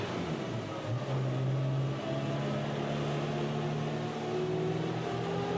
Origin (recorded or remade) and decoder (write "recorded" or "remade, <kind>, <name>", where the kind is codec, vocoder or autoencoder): recorded